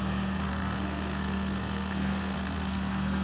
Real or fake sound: fake